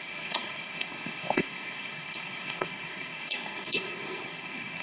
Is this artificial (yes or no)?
yes